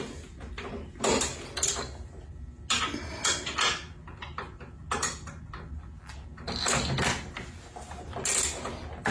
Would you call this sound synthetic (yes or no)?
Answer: no